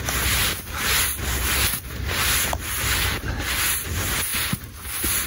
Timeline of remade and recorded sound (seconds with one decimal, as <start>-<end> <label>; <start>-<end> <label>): 0.0-5.3 recorded